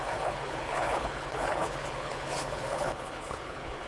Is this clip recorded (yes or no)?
no